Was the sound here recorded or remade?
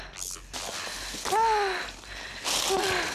recorded